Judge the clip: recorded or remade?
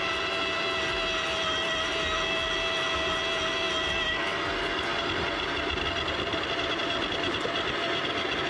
recorded